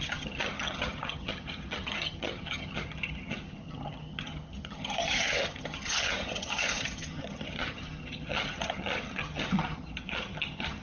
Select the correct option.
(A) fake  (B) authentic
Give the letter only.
A